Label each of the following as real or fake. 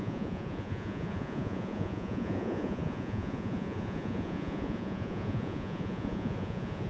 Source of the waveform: fake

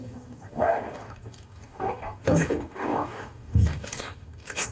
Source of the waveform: fake